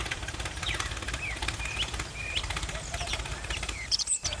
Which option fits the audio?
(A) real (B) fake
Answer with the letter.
B